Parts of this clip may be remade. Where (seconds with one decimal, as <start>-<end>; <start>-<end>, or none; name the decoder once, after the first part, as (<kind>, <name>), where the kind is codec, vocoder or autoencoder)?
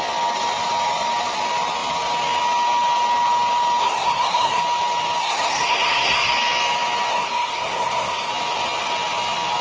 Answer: 3.8-4.6 (codec, SNAC); 5.2-6.3; 7.1-8.3